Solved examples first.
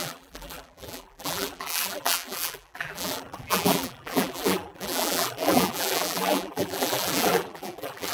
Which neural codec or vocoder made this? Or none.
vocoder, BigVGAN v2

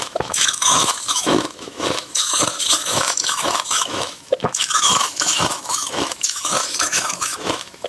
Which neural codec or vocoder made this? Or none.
autoencoder, DAC-VAE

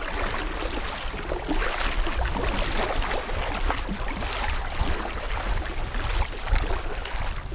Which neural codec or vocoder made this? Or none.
none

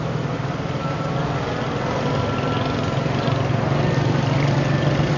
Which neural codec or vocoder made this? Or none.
none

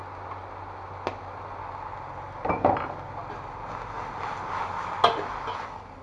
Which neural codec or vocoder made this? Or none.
none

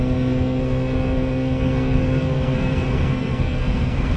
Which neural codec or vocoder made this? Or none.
codec, SNAC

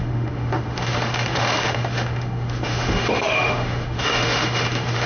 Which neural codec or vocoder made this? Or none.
autoencoder, DAC-VAE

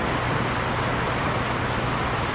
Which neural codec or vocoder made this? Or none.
none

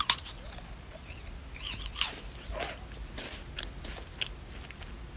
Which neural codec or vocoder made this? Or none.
none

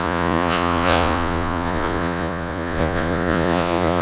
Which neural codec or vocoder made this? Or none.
vocoder, Vocos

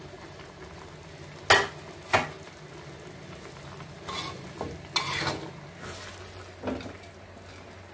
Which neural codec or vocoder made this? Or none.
none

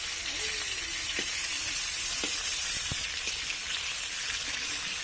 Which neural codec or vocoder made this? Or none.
none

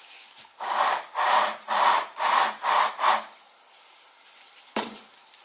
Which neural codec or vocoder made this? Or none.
none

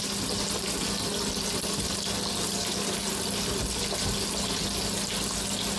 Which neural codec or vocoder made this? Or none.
none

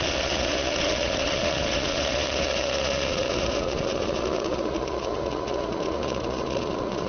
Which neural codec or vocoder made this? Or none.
vocoder, Vocos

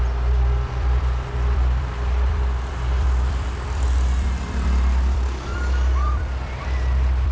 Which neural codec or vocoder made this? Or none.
vocoder, BigVGAN v2